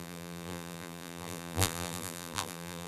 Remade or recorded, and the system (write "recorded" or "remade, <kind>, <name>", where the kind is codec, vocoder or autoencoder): remade, vocoder, BigVGAN v2